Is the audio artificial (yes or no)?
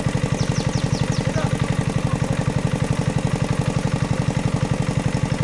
no